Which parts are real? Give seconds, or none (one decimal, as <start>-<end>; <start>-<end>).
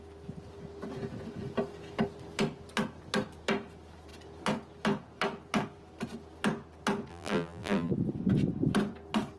0.0-7.1; 7.9-9.4